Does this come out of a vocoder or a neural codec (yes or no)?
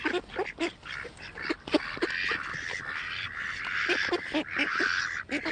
no